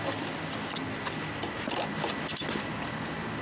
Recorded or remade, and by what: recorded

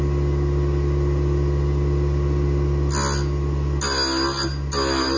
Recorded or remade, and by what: recorded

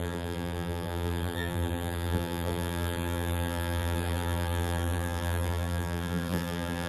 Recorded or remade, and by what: remade, vocoder, BigVGAN v2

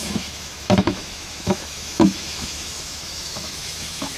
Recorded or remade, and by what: remade, autoencoder, DAC-VAE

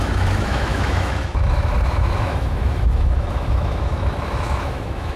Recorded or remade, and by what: remade, autoencoder, DAC-VAE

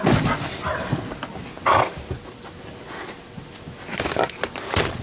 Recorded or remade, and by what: recorded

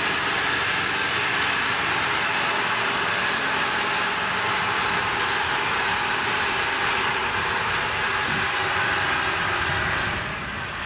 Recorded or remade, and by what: recorded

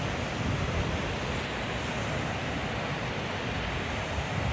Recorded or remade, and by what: recorded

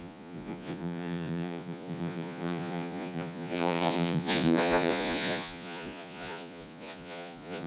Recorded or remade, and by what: remade, vocoder, Vocos